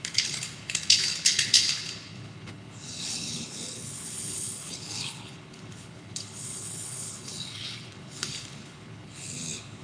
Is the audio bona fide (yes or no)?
no